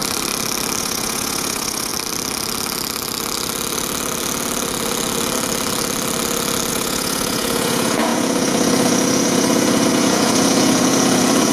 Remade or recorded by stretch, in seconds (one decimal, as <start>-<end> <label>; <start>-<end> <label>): 0.0-0.8 recorded; 0.8-1.9 remade; 1.9-6.7 recorded; 6.7-11.5 remade

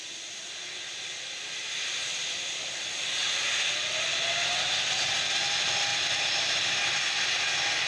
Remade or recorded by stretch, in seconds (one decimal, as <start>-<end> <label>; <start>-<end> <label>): 0.0-7.9 recorded

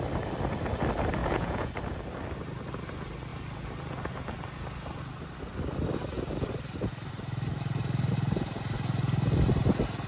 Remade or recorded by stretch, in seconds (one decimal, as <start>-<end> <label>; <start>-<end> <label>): 0.0-1.2 recorded; 1.2-1.7 remade; 1.7-10.1 recorded

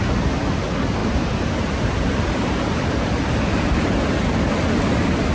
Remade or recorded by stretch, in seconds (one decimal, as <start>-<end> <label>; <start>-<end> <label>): 0.0-1.0 recorded; 1.0-3.8 remade; 3.8-5.3 recorded

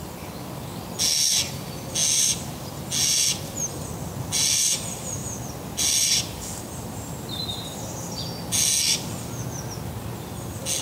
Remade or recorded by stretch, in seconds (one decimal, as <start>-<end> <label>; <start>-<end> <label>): 0.0-10.8 recorded

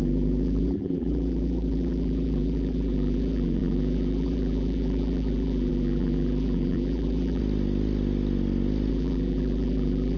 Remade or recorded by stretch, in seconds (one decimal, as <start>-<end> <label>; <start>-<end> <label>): 0.0-7.4 remade; 7.4-8.9 recorded; 8.9-10.2 remade